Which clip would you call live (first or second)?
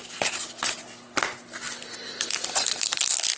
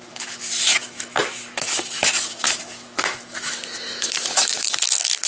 first